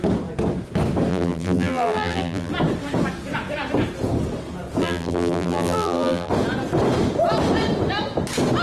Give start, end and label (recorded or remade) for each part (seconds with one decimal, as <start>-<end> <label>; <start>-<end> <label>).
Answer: 0.0-1.1 recorded; 1.1-2.5 remade; 2.5-4.8 recorded; 4.8-6.3 remade; 6.3-8.6 recorded